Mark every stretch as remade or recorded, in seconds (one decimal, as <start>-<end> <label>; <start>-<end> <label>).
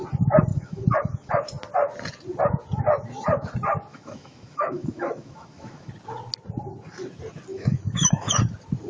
0.0-0.5 recorded; 0.5-1.3 remade; 1.3-3.9 recorded; 3.9-5.9 remade; 5.9-7.5 recorded; 7.5-8.4 remade; 8.4-8.9 recorded